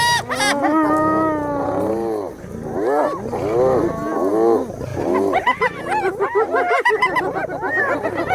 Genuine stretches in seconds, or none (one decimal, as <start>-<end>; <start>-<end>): 0.0-8.3